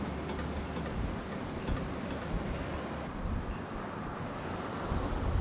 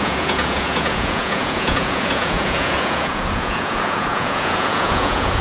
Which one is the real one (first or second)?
first